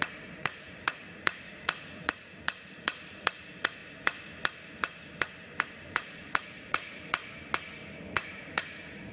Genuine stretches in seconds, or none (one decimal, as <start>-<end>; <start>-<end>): 3.8-5.9; 7.2-8.1